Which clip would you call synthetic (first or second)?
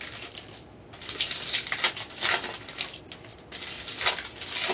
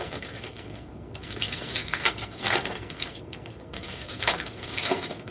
second